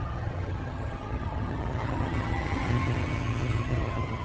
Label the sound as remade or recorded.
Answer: remade